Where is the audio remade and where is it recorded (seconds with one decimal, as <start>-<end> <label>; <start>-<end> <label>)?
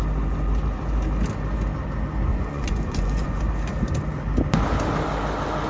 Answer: 0.0-2.3 recorded; 2.3-3.4 remade; 3.4-5.7 recorded